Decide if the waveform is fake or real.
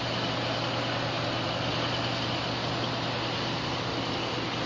real